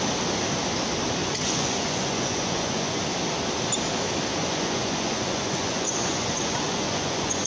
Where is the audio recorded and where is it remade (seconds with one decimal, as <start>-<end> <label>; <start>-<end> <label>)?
0.0-1.2 recorded; 1.2-3.0 remade; 3.0-4.4 recorded; 4.4-7.5 remade